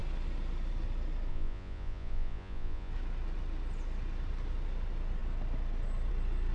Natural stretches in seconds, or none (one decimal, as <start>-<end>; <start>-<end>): 0.0-1.3; 2.9-6.5